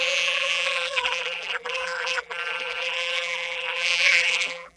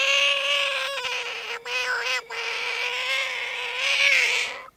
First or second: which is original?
second